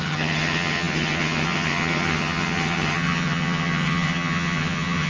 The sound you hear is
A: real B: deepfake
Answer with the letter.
B